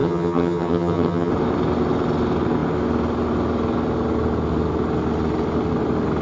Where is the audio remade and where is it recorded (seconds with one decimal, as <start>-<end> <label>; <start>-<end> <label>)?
0.0-1.3 remade; 1.3-6.2 recorded